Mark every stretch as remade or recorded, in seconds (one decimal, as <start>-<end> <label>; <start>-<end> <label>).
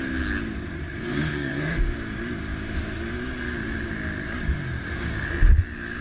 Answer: 0.0-1.0 recorded; 1.0-1.8 remade; 1.8-6.0 recorded